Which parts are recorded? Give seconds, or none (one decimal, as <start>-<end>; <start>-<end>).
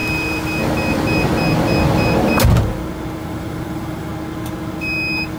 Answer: 0.0-3.2; 4.1-5.4